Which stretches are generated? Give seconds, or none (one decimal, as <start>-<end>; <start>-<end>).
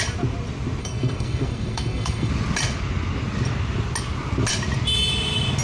0.8-2.3